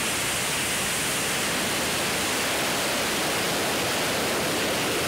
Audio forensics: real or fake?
real